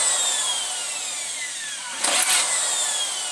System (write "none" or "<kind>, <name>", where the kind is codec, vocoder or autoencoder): none